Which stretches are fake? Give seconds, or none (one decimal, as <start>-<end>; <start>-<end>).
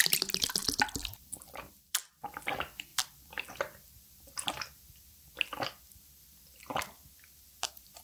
none